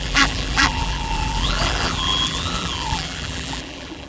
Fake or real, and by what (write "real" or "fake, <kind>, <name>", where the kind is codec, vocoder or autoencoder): fake, vocoder, BigVGAN v2